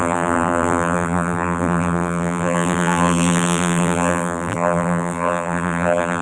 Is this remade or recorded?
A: remade